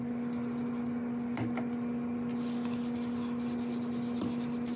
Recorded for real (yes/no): yes